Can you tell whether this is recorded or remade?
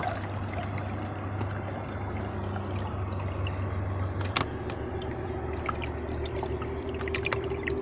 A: recorded